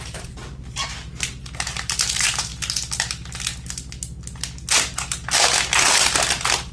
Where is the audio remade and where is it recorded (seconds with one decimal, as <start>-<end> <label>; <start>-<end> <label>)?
0.0-1.1 remade; 1.1-1.7 recorded; 1.7-2.5 remade; 2.5-6.7 recorded